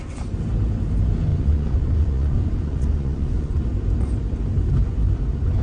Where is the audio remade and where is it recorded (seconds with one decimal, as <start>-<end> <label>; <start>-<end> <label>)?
0.0-1.3 recorded; 1.3-3.6 remade; 3.6-5.6 recorded